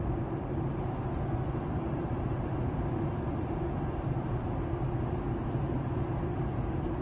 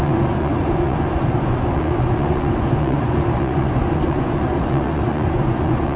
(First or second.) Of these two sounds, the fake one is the second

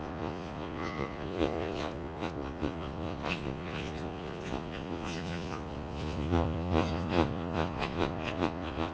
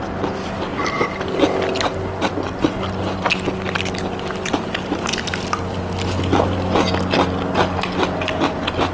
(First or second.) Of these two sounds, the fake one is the first